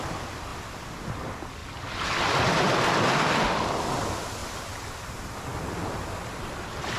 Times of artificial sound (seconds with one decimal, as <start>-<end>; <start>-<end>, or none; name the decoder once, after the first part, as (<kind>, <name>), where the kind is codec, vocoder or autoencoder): none